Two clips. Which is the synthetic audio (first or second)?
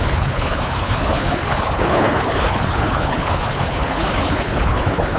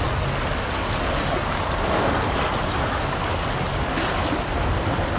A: first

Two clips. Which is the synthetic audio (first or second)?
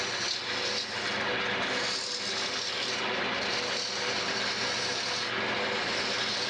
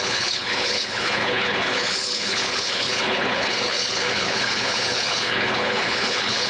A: second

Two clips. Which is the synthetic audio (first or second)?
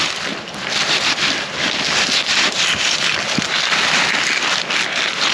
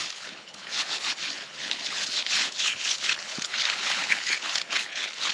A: second